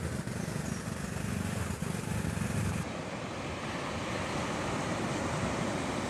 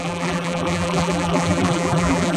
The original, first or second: first